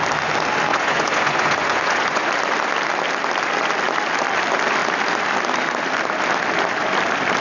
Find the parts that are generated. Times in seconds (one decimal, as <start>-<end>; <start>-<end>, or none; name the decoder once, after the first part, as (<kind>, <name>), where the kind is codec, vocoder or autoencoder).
0.7-2.3 (vocoder, Vocos)